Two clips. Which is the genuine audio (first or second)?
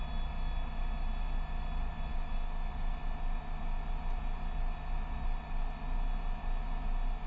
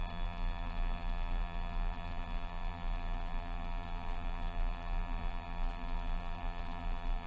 first